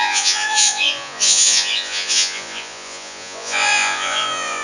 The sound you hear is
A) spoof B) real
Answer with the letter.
A